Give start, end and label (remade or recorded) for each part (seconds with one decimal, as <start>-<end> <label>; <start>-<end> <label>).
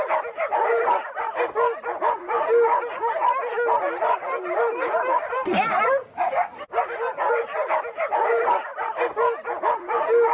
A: 0.0-10.3 recorded